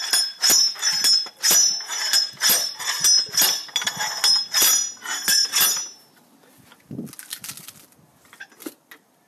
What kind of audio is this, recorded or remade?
recorded